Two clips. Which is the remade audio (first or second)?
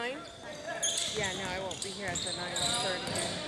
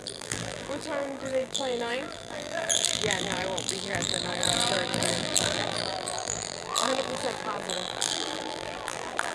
second